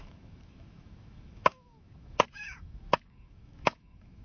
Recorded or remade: remade